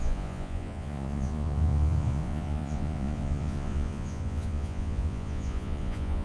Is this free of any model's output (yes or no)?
no